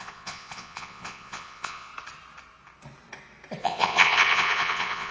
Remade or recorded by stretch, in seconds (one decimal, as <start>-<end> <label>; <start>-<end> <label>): 0.0-1.9 remade; 1.9-3.6 recorded; 3.6-5.1 remade